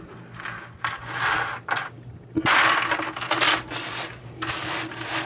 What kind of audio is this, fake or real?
real